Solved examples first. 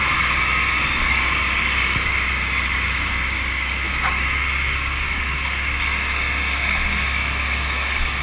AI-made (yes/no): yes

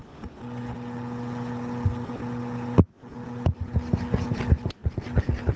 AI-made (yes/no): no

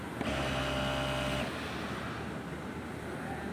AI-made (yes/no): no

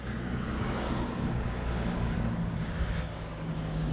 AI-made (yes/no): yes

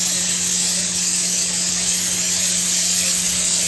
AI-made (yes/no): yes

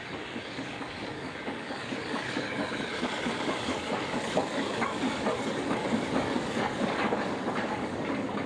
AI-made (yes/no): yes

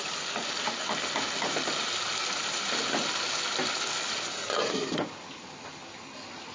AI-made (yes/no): no